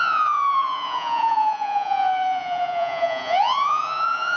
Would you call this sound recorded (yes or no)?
no